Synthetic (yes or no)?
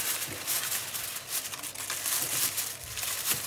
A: no